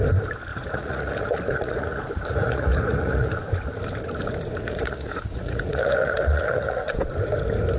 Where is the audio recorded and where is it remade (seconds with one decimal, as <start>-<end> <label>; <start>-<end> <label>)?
0.0-0.5 recorded; 0.5-3.3 remade; 3.3-4.6 recorded; 4.6-6.9 remade; 6.9-7.8 recorded